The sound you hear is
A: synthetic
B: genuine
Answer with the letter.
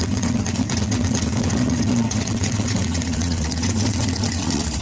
A